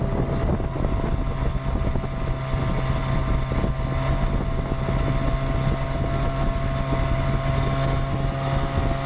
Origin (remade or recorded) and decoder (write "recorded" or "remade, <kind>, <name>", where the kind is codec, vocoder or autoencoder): recorded